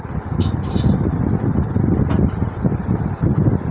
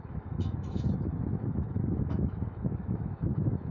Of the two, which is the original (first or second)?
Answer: first